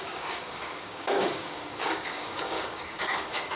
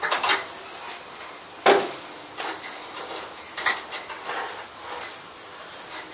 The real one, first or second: second